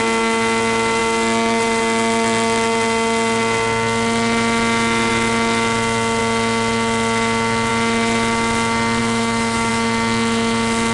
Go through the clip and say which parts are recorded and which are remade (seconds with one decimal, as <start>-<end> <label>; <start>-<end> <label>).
0.0-9.0 recorded; 9.0-9.7 remade; 9.7-10.9 recorded